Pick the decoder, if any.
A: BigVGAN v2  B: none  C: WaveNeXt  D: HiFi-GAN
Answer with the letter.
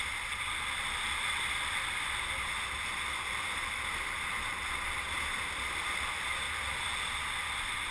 B